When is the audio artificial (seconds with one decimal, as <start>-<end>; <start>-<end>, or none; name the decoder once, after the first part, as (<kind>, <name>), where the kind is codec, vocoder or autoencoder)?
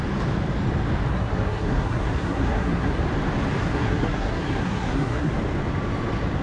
1.1-3.0 (codec, SNAC); 3.6-5.3